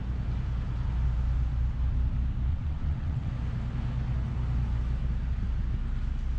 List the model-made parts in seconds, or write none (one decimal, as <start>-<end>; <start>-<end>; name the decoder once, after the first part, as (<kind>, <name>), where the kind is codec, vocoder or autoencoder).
2.5-3.3 (vocoder, WaveNeXt)